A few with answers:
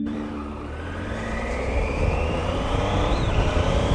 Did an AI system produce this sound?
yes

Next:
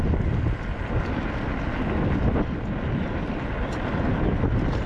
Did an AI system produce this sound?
no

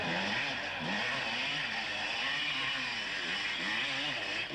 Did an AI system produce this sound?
no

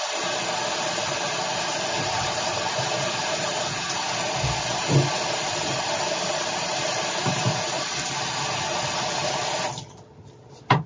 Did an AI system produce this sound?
no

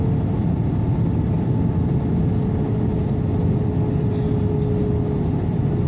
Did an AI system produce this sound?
no